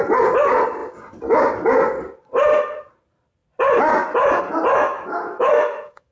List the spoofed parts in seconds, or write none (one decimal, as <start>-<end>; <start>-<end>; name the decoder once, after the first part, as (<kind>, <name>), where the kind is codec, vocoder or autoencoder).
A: 4.9-6.1 (autoencoder, DAC-VAE)